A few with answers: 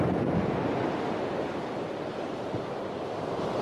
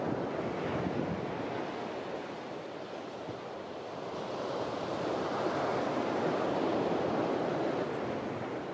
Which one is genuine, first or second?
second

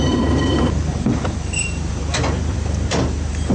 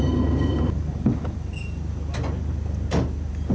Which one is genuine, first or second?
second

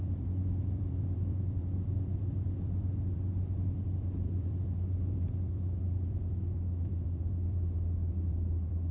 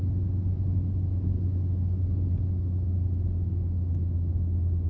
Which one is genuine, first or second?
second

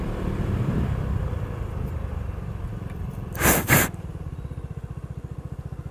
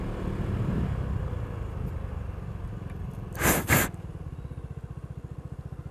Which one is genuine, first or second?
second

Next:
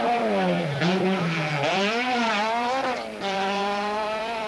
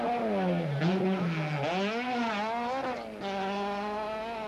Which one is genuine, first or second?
second